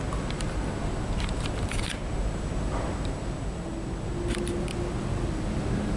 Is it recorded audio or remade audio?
recorded